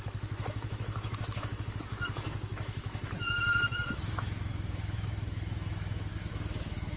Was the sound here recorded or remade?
remade